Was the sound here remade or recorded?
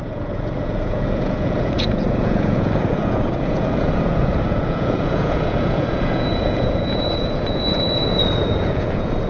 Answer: remade